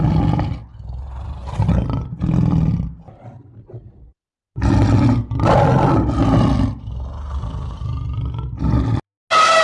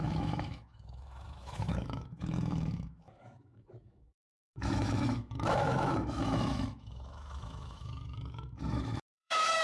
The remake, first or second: second